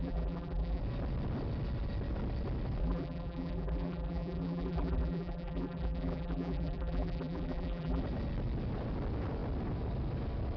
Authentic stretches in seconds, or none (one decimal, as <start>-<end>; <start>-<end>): 0.8-2.8; 8.0-10.6